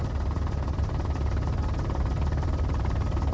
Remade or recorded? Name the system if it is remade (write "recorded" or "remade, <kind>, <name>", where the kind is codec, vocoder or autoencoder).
recorded